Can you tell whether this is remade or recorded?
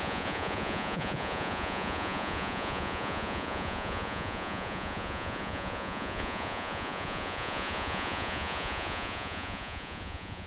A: remade